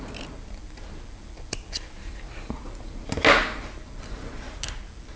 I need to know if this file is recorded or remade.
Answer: recorded